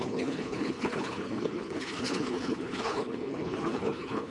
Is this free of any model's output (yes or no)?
no